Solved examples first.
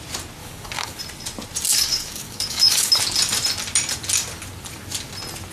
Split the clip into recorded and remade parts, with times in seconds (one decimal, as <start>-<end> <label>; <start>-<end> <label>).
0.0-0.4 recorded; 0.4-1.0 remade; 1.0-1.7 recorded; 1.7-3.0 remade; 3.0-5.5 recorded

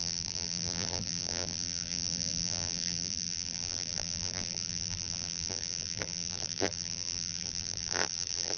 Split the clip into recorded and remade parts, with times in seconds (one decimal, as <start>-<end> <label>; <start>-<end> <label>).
0.0-8.6 remade

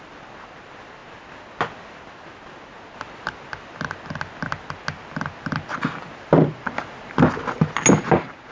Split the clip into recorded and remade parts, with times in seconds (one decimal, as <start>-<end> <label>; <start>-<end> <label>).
0.0-8.5 recorded

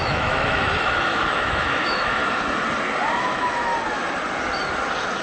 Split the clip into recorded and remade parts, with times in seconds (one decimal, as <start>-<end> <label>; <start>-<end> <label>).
0.0-2.2 remade; 2.2-3.2 recorded; 3.2-3.7 remade; 3.7-5.2 recorded